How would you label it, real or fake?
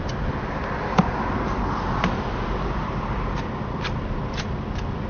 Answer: fake